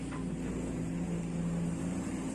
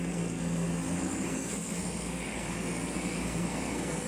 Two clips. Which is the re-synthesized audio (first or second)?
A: second